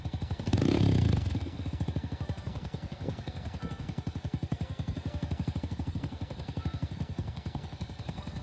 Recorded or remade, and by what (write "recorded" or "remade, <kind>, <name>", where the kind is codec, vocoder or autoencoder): remade, codec, SNAC